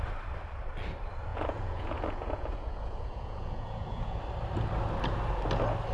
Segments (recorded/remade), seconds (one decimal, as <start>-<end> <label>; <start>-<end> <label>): 0.0-1.3 recorded; 1.3-4.2 remade; 4.2-5.9 recorded